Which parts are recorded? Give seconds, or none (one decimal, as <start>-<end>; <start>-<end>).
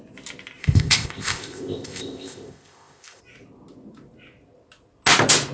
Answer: 0.0-0.6; 3.2-5.5